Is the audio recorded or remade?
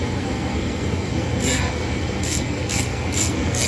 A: remade